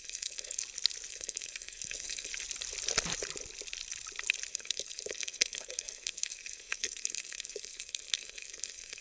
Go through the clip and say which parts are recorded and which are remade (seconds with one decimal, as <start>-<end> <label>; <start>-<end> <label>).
0.0-0.6 remade; 0.6-1.1 recorded; 1.1-2.3 remade; 2.3-4.5 recorded; 4.5-9.0 remade